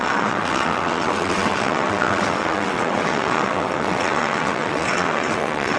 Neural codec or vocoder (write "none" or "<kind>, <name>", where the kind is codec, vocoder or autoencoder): vocoder, WaveNeXt